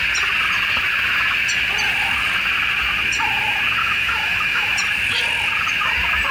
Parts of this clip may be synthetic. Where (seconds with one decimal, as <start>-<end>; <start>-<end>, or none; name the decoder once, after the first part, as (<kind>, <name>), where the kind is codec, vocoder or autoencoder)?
3.8-4.7 (autoencoder, DAC-VAE)